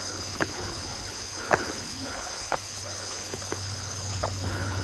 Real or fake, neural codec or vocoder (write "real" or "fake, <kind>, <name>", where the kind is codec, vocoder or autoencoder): fake, codec, HILCodec